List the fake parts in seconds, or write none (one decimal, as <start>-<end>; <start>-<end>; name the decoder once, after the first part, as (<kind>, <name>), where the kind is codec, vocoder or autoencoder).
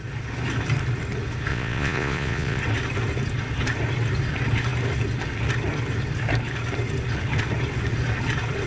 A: 1.5-2.6 (vocoder, Vocos)